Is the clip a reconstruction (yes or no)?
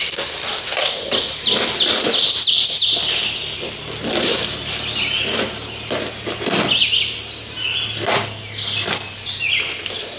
no